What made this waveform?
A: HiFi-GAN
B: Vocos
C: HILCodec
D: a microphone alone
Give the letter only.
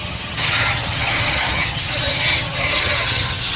A